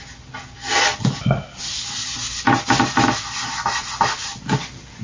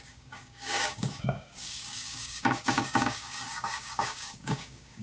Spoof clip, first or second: second